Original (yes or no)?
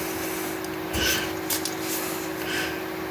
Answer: yes